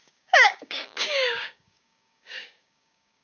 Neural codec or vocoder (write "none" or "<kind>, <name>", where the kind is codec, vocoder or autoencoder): codec, DAC